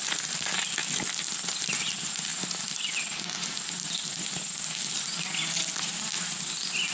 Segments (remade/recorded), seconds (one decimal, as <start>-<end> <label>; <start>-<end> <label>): 0.0-6.9 recorded